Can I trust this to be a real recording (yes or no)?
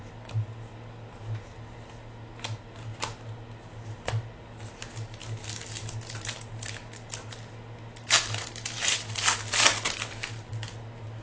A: yes